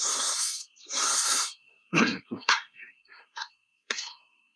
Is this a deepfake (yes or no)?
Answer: yes